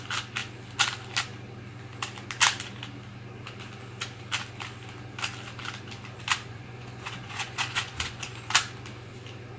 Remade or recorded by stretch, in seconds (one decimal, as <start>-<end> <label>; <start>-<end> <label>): 0.0-6.5 recorded; 6.5-8.5 remade; 8.5-9.6 recorded